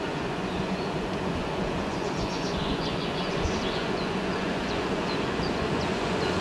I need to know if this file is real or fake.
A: fake